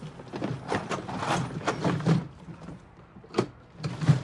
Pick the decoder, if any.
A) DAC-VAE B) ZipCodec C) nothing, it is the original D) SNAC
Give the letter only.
C